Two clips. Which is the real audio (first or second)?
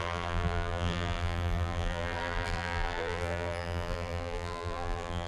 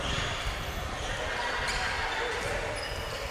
second